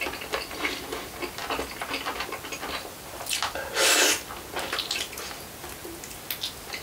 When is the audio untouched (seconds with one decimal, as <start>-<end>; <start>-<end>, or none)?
0.0-6.8